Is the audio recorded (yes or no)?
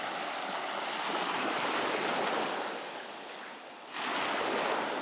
yes